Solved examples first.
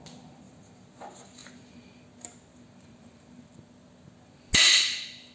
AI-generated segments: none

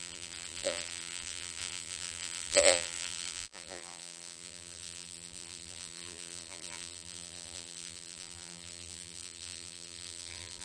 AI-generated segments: 0.0-10.6 (vocoder, BigVGAN v2)

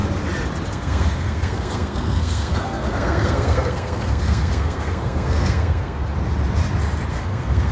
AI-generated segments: 0.7-6.1 (codec, SNAC); 7.1-7.7

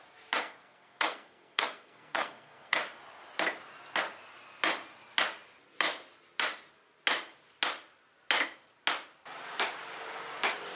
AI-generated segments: 0.4-2.8 (codec, SNAC)

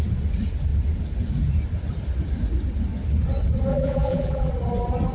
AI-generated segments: 3.7-4.5 (vocoder, BigVGAN v2)

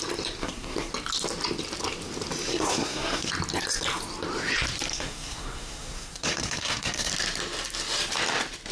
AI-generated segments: 0.4-0.9 (codec, SNAC); 2.5-3.3; 4.9-7.1

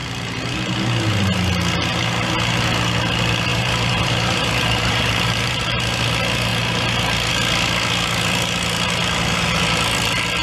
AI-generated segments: 3.5-5.8 (vocoder, BigVGAN v2)